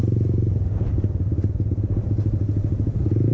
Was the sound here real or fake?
real